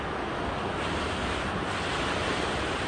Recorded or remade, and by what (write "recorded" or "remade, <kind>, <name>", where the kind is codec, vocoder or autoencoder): recorded